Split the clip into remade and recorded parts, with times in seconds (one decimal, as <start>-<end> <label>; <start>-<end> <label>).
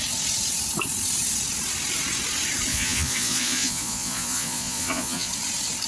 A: 0.0-2.7 recorded; 2.7-5.3 remade; 5.3-5.9 recorded